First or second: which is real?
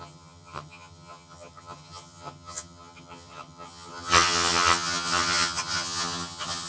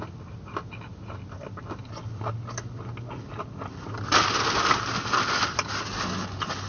second